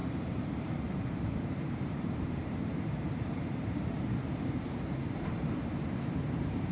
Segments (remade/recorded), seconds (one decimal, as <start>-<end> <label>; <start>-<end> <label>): 0.0-6.7 remade